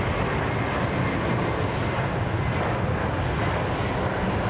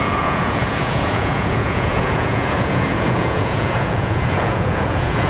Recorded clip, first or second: first